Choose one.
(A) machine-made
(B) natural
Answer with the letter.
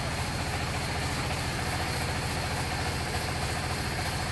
B